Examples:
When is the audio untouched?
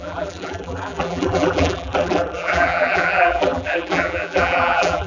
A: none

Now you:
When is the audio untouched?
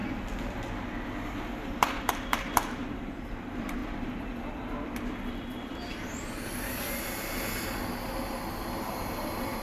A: 0.0-1.6; 3.8-8.8